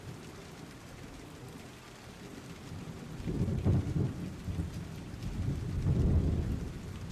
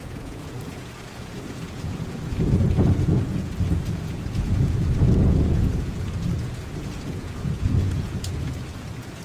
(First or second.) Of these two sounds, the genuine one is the first